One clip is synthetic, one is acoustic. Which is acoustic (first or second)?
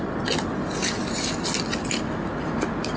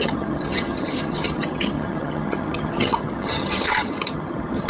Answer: first